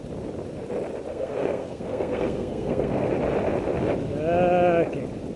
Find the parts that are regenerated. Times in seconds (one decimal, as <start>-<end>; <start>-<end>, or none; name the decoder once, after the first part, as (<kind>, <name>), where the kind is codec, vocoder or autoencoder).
1.1-3.1 (codec, SNAC)